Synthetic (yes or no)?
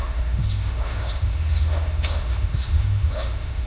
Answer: yes